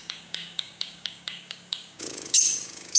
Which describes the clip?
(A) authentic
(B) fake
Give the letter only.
B